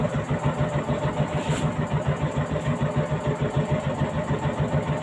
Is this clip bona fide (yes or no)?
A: yes